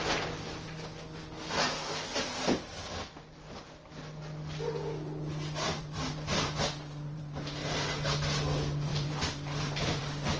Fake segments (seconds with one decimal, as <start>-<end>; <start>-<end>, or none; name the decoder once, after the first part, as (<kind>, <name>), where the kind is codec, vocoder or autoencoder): 5.7-7.8 (vocoder, BigVGAN v2); 8.9-10.0